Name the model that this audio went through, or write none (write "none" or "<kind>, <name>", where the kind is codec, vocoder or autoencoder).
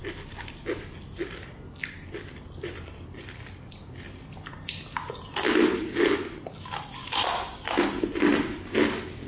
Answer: none